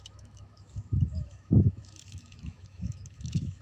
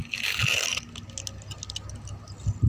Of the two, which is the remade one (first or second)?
first